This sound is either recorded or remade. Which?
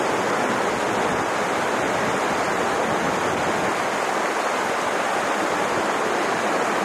recorded